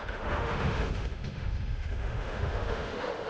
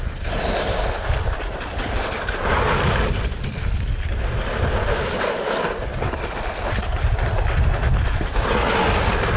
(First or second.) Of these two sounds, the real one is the second